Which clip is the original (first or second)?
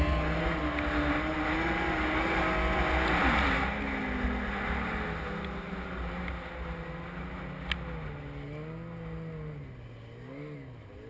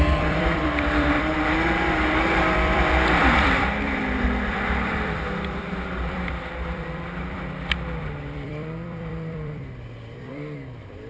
first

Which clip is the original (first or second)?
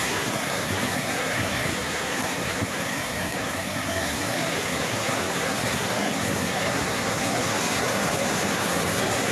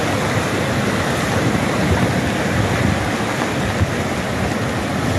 second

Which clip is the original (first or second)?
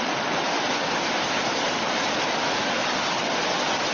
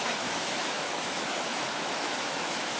first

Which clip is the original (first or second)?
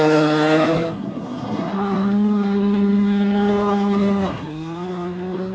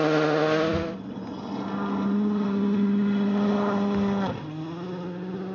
second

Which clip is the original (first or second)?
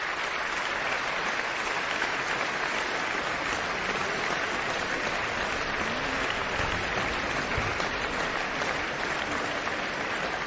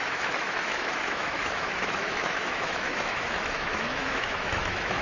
first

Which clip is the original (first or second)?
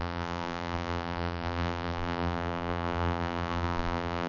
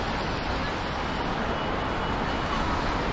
second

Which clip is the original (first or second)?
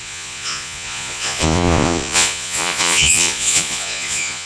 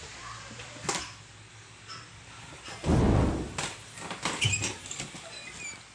second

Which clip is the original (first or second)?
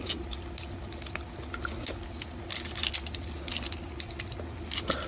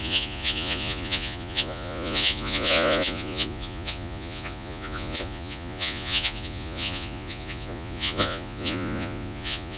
first